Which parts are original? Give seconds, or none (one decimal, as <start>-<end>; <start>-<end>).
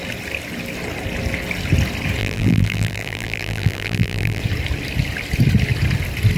0.0-2.2; 4.4-6.4